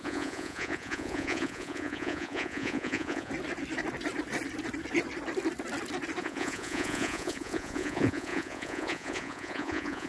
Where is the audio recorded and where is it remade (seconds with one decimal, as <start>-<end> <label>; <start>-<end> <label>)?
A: 0.0-3.3 remade; 3.3-6.2 recorded; 6.2-10.1 remade